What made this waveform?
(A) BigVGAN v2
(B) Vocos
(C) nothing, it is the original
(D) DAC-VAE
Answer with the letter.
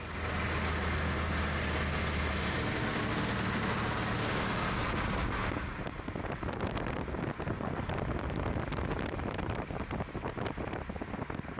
C